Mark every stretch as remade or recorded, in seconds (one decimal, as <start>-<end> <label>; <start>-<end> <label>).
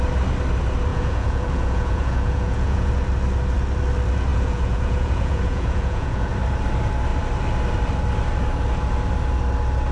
0.0-0.9 recorded; 0.9-2.9 remade; 2.9-4.3 recorded; 4.3-6.3 remade; 6.3-9.9 recorded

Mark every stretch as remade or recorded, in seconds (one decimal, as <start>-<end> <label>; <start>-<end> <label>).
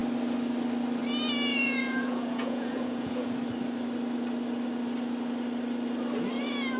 0.0-1.5 recorded; 1.5-3.3 remade; 3.3-6.8 recorded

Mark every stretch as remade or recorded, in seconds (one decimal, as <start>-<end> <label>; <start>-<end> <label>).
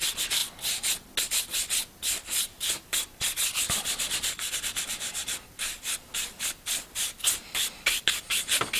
0.0-8.8 recorded